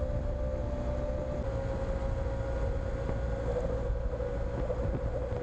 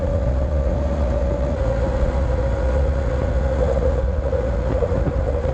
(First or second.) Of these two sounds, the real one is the first